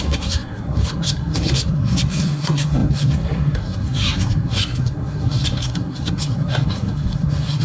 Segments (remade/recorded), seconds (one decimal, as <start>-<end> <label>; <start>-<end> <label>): 0.0-7.6 remade

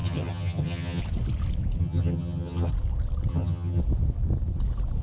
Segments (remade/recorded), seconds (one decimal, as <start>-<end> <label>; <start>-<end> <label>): 0.0-1.0 remade; 1.0-1.8 recorded; 1.8-2.7 remade; 2.7-3.3 recorded; 3.3-3.8 remade; 3.8-5.0 recorded

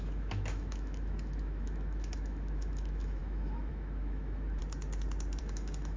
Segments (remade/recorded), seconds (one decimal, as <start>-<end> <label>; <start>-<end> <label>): 0.0-4.6 remade; 4.6-5.4 recorded; 5.4-6.0 remade

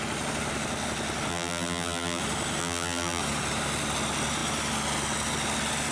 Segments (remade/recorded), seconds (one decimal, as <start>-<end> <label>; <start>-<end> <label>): 0.0-1.3 recorded; 1.3-2.2 remade; 2.2-2.6 recorded; 2.6-3.2 remade; 3.2-5.9 recorded